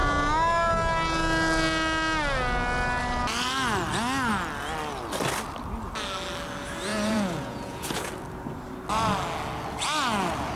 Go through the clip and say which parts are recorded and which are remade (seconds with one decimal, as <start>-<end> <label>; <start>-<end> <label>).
0.0-6.9 recorded; 6.9-8.1 remade; 8.1-10.6 recorded